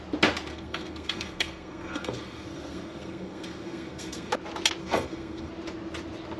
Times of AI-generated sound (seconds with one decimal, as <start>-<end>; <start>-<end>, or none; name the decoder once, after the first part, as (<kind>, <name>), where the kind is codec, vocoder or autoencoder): 0.5-4.3 (codec, SNAC); 4.8-5.5